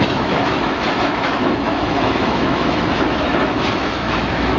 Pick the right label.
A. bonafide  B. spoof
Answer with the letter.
B